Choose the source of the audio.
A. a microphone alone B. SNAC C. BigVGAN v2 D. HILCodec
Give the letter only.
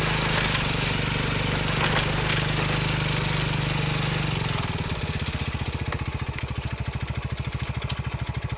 A